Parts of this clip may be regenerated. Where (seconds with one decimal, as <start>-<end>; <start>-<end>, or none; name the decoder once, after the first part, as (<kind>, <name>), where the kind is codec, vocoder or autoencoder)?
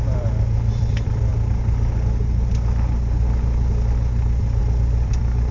0.0-1.3 (vocoder, BigVGAN v2); 4.6-5.5